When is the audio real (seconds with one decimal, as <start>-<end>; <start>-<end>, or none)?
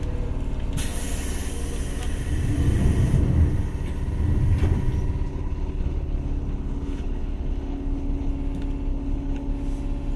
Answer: 0.0-5.3; 8.3-8.9; 9.5-10.2